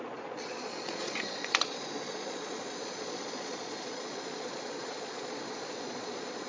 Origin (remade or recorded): remade